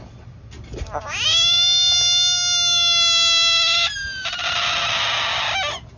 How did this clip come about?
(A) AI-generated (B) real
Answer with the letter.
B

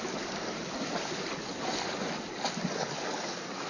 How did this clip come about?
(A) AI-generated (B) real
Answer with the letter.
B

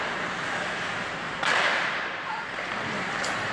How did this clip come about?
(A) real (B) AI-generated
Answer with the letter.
A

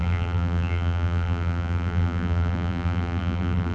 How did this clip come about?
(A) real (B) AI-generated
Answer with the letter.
B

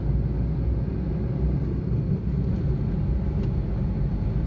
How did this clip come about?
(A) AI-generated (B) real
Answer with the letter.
B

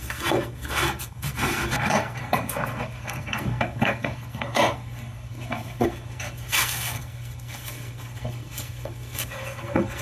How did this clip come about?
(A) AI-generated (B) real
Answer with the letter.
A